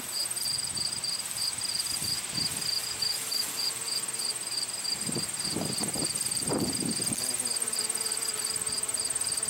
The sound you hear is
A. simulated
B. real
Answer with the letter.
A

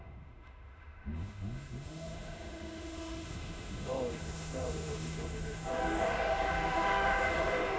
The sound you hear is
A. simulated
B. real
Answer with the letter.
A